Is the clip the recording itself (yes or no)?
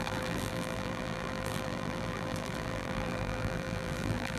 no